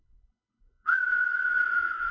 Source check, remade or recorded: remade